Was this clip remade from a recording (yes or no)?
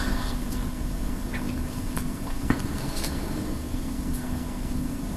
yes